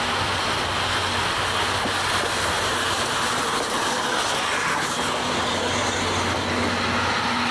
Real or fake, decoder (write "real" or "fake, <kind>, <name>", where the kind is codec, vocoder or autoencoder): real